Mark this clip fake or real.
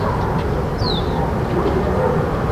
real